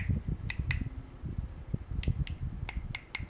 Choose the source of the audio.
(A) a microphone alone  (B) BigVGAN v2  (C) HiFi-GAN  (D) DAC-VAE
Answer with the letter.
A